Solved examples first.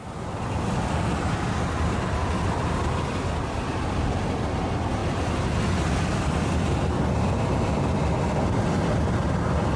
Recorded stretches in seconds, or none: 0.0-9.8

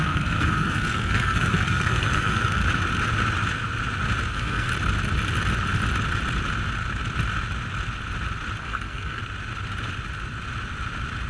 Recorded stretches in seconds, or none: 2.6-4.3; 4.7-8.6; 9.2-11.3

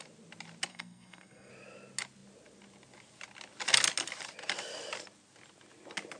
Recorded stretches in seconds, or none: 0.0-0.7; 1.5-6.2

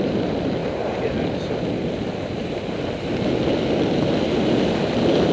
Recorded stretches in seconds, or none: 0.0-5.3

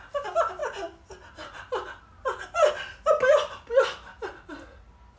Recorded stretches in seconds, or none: 0.0-5.2

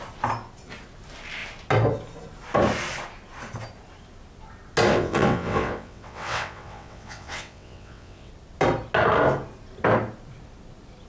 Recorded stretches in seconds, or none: 0.0-4.9; 8.3-11.1